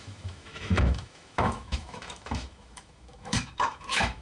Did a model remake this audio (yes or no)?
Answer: yes